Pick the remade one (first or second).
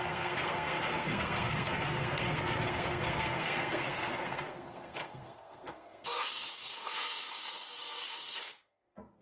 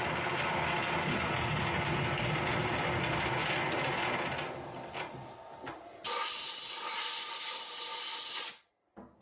first